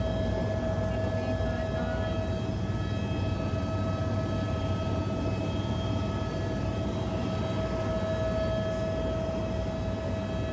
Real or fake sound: real